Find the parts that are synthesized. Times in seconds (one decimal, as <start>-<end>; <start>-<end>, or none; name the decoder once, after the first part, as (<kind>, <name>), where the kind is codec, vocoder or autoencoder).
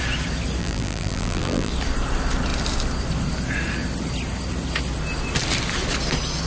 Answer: 0.6-1.7 (vocoder, BigVGAN v2)